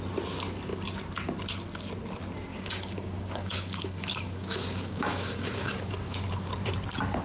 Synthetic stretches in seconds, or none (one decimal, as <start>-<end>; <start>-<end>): 2.5-6.5